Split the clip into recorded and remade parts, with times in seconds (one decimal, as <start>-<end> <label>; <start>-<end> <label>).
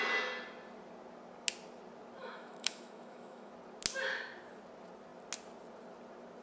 0.0-2.2 recorded; 2.2-3.5 remade; 3.5-6.4 recorded